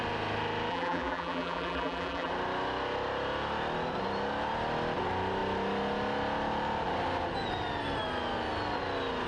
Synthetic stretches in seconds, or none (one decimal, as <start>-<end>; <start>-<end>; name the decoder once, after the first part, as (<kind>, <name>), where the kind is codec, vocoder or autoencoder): 0.7-2.3 (vocoder, BigVGAN v2)